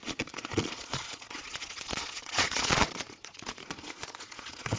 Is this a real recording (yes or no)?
no